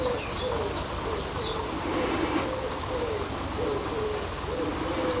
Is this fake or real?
real